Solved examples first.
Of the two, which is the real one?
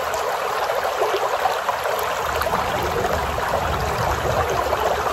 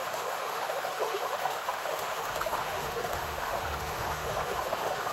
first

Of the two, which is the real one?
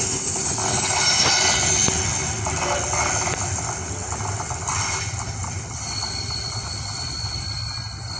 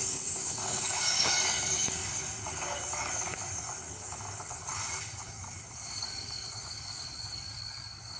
first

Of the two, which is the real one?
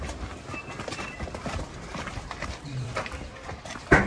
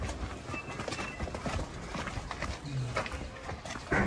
second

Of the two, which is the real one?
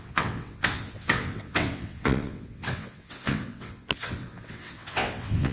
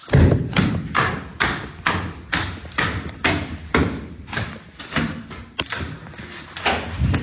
second